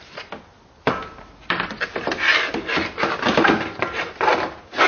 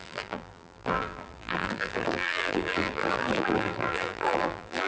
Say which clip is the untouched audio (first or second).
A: first